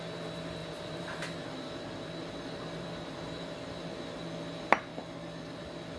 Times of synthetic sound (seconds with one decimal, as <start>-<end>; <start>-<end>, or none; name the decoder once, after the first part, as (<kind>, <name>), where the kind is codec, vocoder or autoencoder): 0.6-3.8 (vocoder, BigVGAN v2); 4.9-5.6